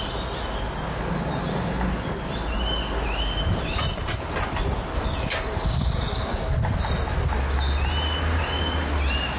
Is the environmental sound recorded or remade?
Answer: recorded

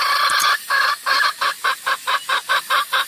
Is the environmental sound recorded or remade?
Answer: remade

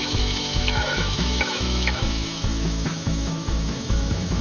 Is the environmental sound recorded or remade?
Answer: remade